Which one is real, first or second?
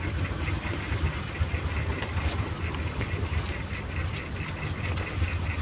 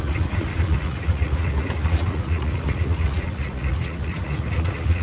first